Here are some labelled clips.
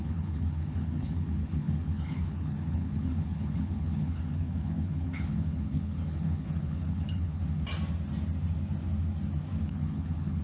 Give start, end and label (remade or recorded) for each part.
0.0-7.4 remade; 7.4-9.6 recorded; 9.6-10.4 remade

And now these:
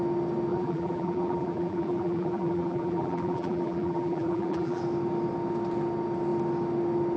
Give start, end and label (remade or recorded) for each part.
0.0-0.5 recorded; 0.5-4.8 remade; 4.8-7.2 recorded

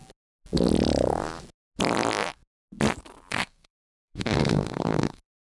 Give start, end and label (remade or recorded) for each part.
0.0-3.3 recorded; 3.3-5.5 remade

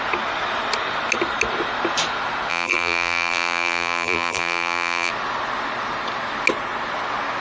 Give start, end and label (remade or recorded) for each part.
0.0-2.5 recorded; 2.5-5.1 remade; 5.1-7.4 recorded

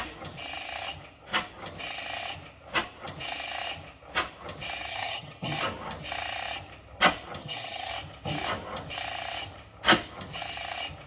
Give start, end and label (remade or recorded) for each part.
0.0-4.9 recorded; 4.9-5.6 remade; 5.6-7.4 recorded; 7.4-7.9 remade; 7.9-11.1 recorded

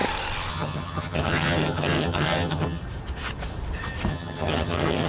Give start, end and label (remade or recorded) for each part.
0.0-0.5 recorded; 0.5-2.8 remade; 2.8-4.1 recorded; 4.1-5.1 remade

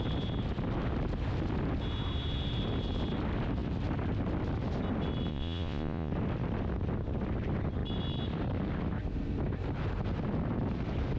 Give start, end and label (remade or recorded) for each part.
0.0-5.3 recorded; 5.3-6.1 remade; 6.1-11.2 recorded